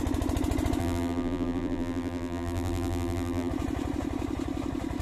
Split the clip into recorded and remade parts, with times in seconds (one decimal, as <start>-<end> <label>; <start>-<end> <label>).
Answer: 0.0-0.8 recorded; 0.8-3.5 remade; 3.5-5.0 recorded